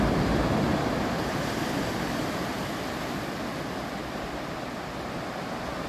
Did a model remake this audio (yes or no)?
no